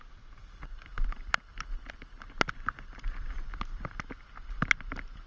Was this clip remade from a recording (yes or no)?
no